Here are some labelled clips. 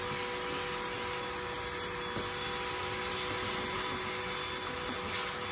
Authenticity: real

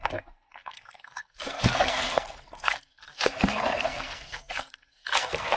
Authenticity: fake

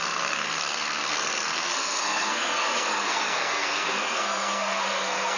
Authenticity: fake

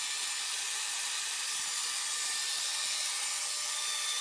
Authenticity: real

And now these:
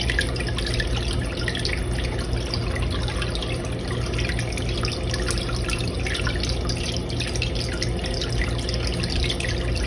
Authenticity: real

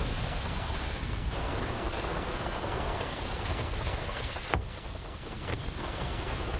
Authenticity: fake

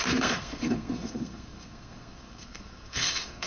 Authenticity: fake